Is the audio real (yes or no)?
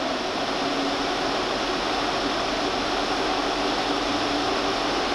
yes